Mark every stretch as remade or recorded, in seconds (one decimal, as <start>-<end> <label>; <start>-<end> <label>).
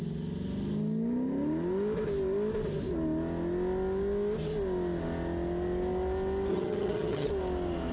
0.0-6.5 recorded; 6.5-7.3 remade; 7.3-7.9 recorded